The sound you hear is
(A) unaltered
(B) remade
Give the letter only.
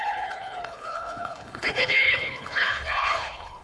B